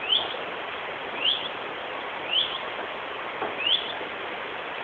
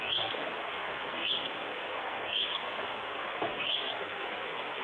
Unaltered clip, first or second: first